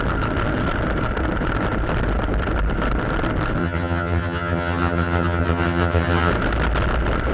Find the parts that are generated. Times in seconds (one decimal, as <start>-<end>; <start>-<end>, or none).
3.6-6.3